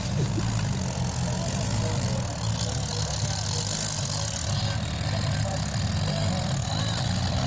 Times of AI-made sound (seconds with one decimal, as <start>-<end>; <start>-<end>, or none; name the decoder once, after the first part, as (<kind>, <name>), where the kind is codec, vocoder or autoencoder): none